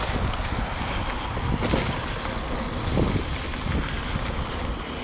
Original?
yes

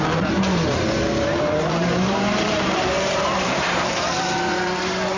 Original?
no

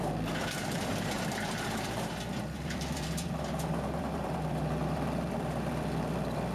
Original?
no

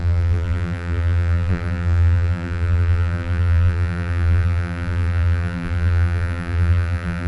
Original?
no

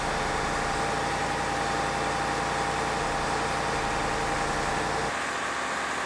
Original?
yes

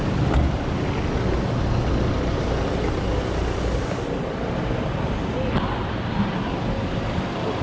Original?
yes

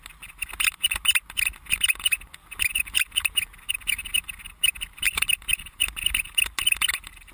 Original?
yes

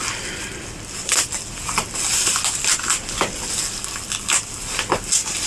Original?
yes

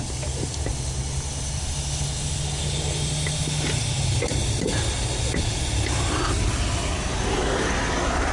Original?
yes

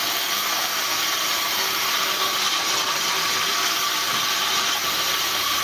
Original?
no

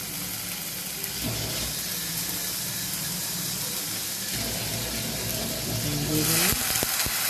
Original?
yes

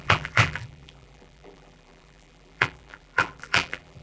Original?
no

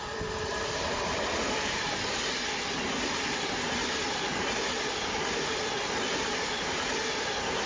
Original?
no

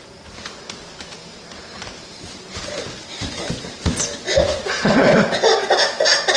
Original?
yes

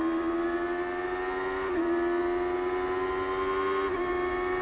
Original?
yes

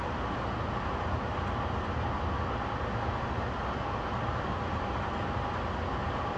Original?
yes